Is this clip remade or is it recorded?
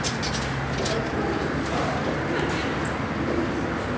recorded